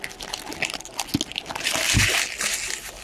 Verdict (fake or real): real